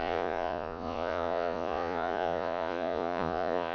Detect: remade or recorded remade